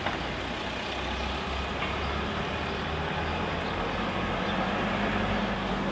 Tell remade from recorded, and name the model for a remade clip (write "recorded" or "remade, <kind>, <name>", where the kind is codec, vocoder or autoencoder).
recorded